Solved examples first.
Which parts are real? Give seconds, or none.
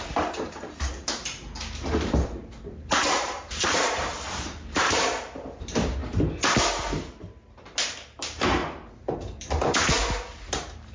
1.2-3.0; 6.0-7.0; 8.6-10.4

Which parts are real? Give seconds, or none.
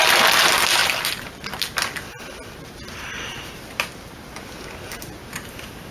0.0-0.8; 4.3-5.9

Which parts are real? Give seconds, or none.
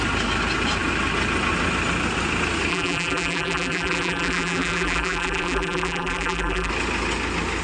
0.0-2.7; 6.7-7.6